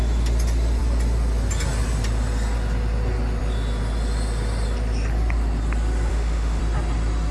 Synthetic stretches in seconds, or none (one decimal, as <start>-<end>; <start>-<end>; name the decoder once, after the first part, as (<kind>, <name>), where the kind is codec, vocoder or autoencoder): 6.1-6.6 (autoencoder, DAC-VAE)